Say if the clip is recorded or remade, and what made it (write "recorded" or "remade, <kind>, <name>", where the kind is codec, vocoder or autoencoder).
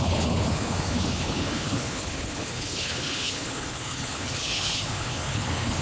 remade, codec, HILCodec